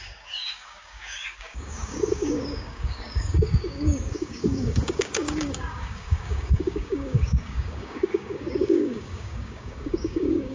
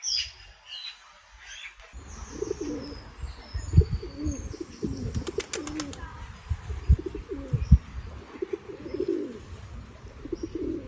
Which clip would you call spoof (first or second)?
first